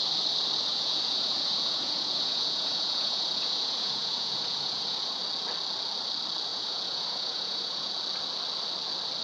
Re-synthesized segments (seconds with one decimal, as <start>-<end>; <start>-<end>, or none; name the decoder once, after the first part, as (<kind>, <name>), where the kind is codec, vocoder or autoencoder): 0.7-5.2 (vocoder, Vocos); 6.5-7.9